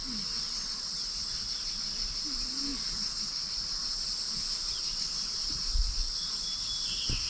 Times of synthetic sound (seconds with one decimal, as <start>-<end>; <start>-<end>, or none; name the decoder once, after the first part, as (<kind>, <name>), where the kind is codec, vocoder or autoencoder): none